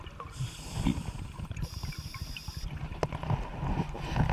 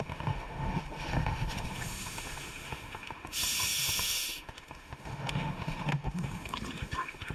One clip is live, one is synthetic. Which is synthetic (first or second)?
second